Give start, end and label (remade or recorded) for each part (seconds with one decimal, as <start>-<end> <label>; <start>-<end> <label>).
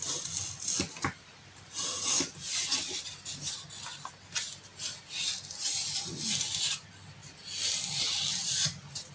0.0-9.1 recorded